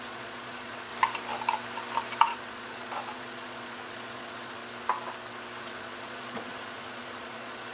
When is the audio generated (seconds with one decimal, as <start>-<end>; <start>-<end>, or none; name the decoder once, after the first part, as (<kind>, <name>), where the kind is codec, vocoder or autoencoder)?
0.0-0.9 (vocoder, Vocos); 2.2-4.6; 5.6-7.7

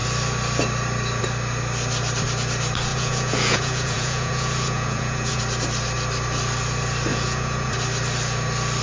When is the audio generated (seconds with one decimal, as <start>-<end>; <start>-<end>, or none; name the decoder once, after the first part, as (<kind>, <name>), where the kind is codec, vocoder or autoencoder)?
2.9-5.4 (vocoder, Vocos); 7.1-7.7

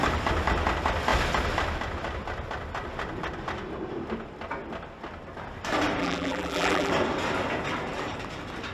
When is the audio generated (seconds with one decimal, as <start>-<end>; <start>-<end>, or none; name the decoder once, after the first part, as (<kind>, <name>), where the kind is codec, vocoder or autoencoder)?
6.0-6.9 (vocoder, BigVGAN v2)

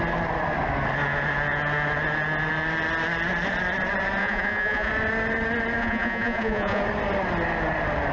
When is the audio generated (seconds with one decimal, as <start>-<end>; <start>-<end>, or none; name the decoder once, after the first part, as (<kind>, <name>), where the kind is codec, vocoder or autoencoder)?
4.2-4.9 (vocoder, Vocos); 5.8-6.8